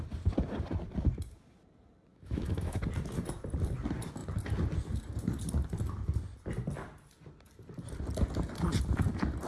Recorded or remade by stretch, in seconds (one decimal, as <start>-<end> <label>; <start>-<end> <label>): 0.0-2.1 recorded; 2.1-2.8 remade; 2.8-9.5 recorded